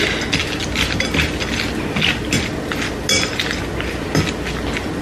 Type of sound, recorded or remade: recorded